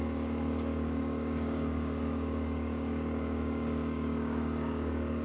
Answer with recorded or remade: remade